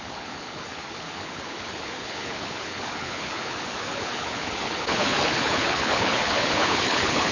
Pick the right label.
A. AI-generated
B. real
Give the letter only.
A